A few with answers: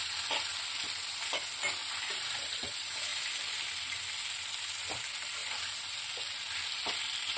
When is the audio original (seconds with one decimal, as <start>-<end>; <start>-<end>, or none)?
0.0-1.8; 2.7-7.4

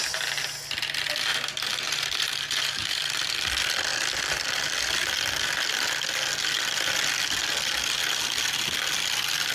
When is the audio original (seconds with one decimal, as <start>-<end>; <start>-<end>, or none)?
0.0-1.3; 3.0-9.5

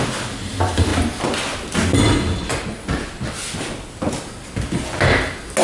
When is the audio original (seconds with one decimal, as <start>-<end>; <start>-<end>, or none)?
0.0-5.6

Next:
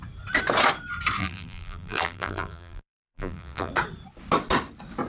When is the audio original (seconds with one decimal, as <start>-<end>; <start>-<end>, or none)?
0.0-1.2; 3.7-5.1

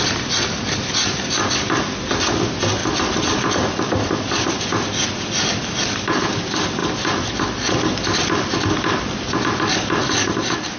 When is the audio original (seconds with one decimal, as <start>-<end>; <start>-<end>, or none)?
0.0-2.8; 4.5-6.8; 7.3-10.8

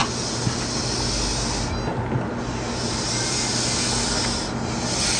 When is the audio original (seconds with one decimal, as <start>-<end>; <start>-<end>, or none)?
0.0-5.2